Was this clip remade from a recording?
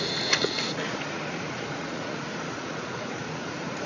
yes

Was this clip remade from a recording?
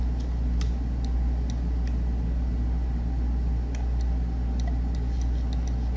no